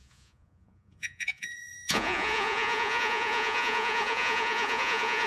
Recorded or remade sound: remade